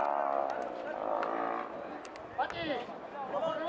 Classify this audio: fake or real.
real